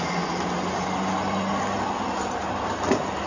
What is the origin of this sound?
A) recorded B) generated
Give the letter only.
A